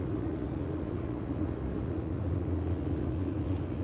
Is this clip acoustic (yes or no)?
no